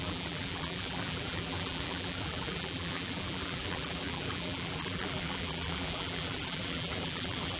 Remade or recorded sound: remade